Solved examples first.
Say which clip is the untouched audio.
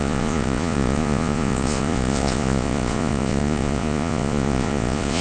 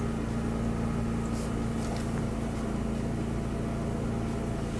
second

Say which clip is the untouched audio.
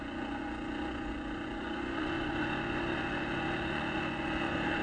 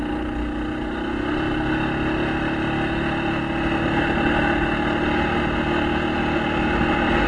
second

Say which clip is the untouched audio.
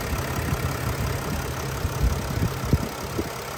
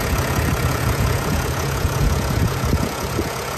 first